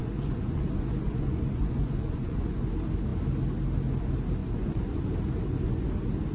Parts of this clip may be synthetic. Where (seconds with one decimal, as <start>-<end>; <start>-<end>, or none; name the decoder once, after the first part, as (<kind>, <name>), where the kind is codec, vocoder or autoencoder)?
0.0-2.7 (vocoder, Vocos); 4.4-5.0